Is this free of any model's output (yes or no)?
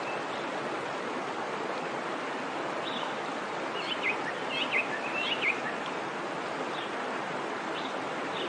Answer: no